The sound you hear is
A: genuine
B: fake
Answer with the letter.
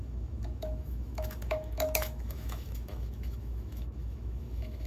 B